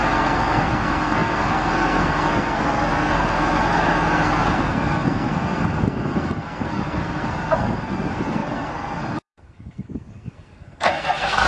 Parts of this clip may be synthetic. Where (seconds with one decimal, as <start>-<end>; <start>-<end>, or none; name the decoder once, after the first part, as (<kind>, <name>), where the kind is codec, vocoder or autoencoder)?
0.0-11.5 (codec, SNAC)